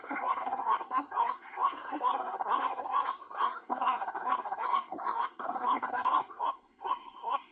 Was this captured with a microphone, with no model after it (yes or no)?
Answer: no